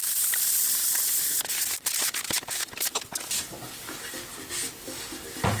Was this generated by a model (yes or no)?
no